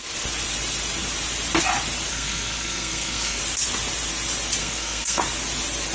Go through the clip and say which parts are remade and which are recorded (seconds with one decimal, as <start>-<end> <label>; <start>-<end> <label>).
0.0-2.1 recorded; 2.1-3.4 remade; 3.4-4.6 recorded; 4.6-5.2 remade; 5.2-5.9 recorded